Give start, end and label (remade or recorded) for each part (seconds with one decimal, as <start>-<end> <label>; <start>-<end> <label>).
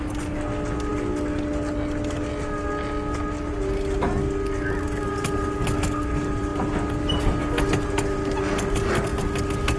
0.0-9.8 recorded